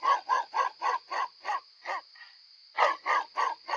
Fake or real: real